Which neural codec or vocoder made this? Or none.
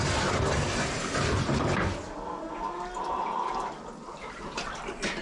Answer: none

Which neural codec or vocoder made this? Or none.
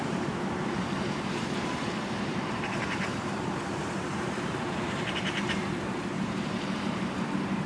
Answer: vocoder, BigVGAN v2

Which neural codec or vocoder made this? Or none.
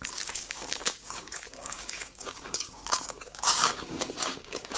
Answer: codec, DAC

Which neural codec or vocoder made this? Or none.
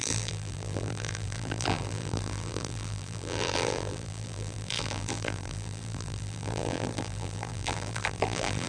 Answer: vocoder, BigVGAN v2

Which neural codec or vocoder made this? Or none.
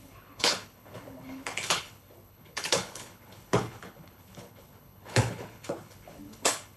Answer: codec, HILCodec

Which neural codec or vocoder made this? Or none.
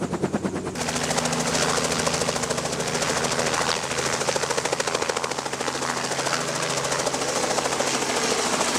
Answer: none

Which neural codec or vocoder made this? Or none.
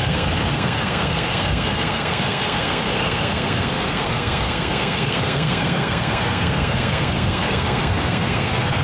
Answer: codec, SNAC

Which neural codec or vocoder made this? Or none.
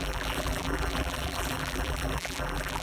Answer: vocoder, BigVGAN v2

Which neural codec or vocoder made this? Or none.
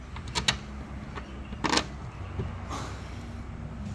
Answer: none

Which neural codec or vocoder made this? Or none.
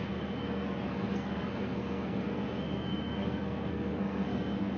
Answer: codec, SNAC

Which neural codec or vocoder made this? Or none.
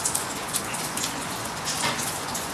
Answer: vocoder, Vocos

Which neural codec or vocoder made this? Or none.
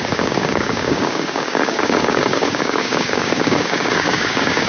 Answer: codec, DAC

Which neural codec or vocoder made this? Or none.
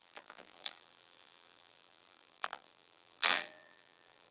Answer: vocoder, BigVGAN v2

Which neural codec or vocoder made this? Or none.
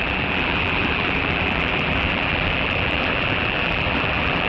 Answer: vocoder, BigVGAN v2